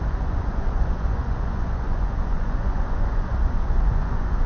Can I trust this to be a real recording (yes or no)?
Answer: no